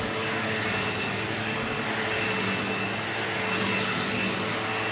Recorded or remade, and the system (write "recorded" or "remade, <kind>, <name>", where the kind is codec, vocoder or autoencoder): recorded